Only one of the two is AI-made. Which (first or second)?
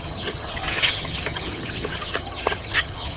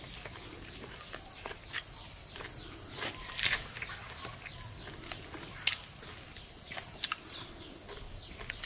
first